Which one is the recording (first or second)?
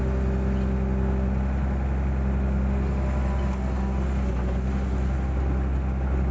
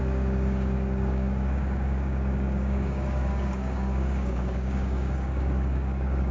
first